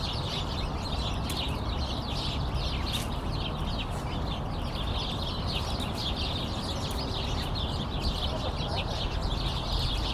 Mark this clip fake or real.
real